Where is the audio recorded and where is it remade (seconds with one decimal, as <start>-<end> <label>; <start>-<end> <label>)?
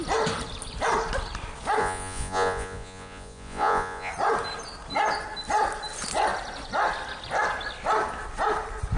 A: 0.0-1.8 recorded; 1.8-4.1 remade; 4.1-9.0 recorded